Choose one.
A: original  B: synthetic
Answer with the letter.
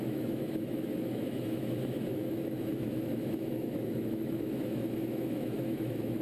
B